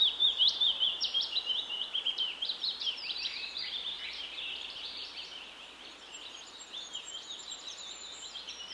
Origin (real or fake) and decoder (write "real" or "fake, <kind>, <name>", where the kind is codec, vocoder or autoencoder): fake, vocoder, BigVGAN v2